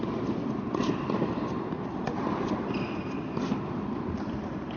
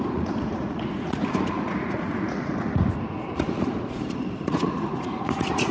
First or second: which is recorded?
first